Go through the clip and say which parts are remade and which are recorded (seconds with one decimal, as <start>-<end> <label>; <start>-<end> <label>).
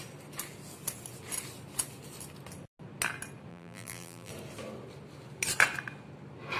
0.0-3.5 recorded; 3.5-4.3 remade; 4.3-6.6 recorded